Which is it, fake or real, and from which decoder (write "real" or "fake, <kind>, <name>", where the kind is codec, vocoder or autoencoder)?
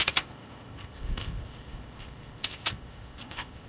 fake, codec, ZipCodec